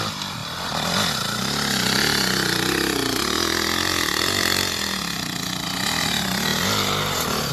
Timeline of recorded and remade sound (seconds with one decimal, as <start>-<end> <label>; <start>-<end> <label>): 0.0-6.5 recorded; 6.5-7.5 remade